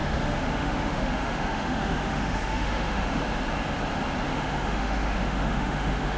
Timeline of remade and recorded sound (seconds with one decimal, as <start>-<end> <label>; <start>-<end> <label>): 0.0-3.2 remade; 3.2-4.3 recorded; 4.3-6.2 remade